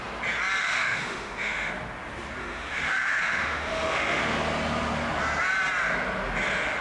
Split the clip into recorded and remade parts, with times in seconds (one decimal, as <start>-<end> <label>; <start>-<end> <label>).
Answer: 0.0-0.6 recorded; 0.6-1.7 remade; 1.7-2.4 recorded; 2.4-4.2 remade; 4.2-6.8 recorded